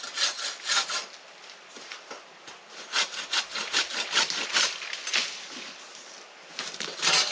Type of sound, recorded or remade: recorded